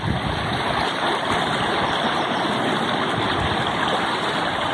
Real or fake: real